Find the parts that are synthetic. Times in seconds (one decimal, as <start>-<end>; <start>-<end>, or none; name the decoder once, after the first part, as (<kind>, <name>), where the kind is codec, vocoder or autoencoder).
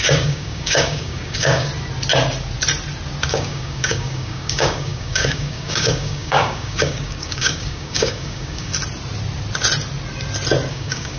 0.0-1.7 (codec, DAC); 3.3-8.7; 10.7-11.2